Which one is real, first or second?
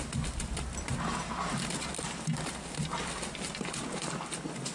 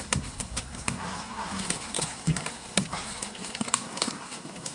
first